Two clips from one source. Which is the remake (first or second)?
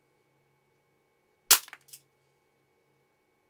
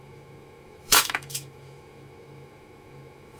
second